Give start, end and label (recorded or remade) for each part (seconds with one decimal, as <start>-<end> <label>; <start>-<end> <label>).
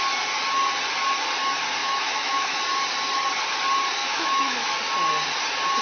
0.0-1.8 recorded; 1.8-2.6 remade; 2.6-4.0 recorded; 4.0-4.7 remade; 4.7-5.8 recorded